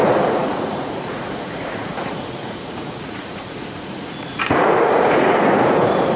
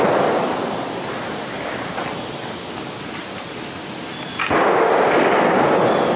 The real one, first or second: second